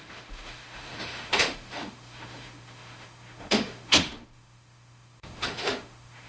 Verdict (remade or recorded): remade